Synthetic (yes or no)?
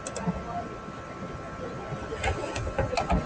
no